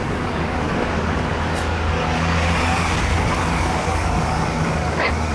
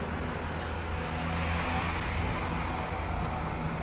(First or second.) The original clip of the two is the second